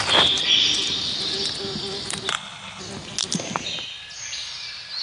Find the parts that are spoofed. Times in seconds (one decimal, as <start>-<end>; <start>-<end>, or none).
2.3-2.8

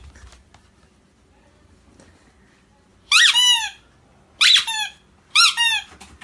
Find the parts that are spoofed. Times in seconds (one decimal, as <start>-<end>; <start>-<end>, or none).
none